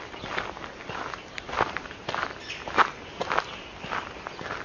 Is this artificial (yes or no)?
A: no